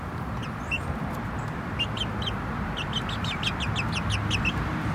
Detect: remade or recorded recorded